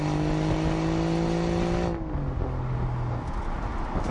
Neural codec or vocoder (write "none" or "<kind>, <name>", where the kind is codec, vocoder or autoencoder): none